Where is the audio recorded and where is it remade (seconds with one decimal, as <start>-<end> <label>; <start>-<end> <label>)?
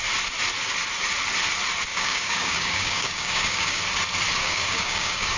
0.0-1.9 recorded; 1.9-3.8 remade; 3.8-4.4 recorded; 4.4-5.4 remade